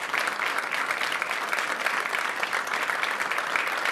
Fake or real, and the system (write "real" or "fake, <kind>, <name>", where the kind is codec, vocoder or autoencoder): fake, vocoder, BigVGAN v2